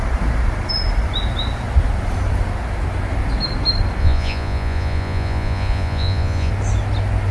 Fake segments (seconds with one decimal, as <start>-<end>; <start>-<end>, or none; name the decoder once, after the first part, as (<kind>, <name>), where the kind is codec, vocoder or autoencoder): 4.0-6.5 (vocoder, Vocos)